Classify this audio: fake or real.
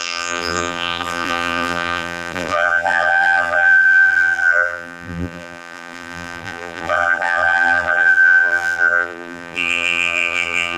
fake